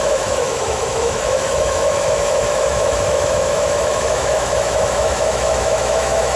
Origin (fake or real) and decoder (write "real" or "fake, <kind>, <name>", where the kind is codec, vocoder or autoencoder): fake, autoencoder, DAC-VAE